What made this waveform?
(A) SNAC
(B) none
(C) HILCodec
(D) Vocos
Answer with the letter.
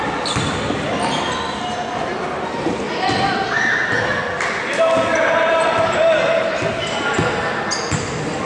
B